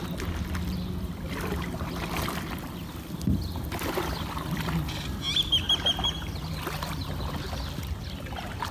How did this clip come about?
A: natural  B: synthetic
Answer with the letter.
A